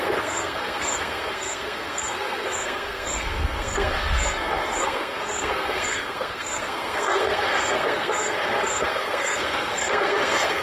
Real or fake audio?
fake